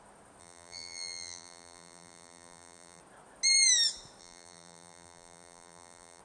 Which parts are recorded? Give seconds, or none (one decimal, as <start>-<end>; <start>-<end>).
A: 0.0-0.4; 3.0-4.2

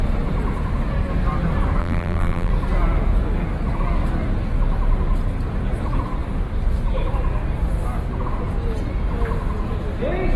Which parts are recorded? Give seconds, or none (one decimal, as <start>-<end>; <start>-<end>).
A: 0.0-1.8; 2.5-10.4